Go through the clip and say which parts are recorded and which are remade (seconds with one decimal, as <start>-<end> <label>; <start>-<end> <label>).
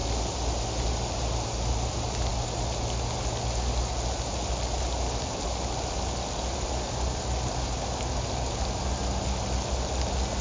0.0-10.4 recorded